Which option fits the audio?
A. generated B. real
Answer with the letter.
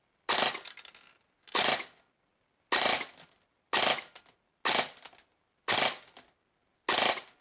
B